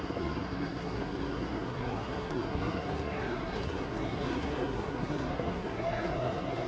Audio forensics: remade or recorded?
remade